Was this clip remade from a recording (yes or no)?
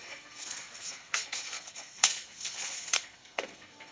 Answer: yes